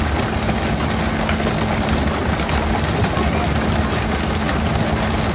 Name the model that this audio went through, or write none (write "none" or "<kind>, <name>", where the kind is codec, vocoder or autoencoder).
none